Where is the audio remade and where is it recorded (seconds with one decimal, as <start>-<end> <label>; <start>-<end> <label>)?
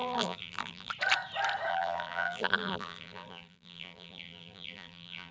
0.0-0.9 remade; 0.9-1.7 recorded; 1.7-5.3 remade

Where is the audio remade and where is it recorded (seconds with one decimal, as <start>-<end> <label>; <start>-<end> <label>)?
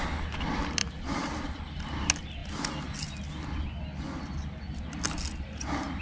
0.0-0.8 recorded; 0.8-1.7 remade; 1.7-6.0 recorded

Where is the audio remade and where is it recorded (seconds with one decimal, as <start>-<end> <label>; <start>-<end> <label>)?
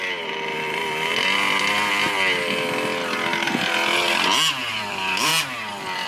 0.0-1.1 remade; 1.1-4.7 recorded; 4.7-5.3 remade; 5.3-6.1 recorded